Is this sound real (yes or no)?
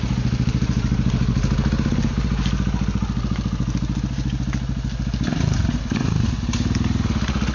yes